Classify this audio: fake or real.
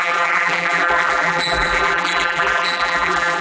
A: fake